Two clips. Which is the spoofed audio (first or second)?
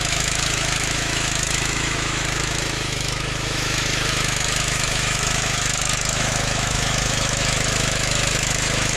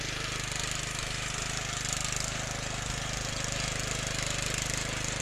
first